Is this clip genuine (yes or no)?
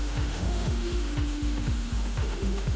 no